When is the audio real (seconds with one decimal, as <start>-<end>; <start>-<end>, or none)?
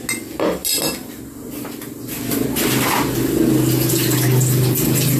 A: 0.0-5.2